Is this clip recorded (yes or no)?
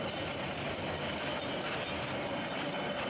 yes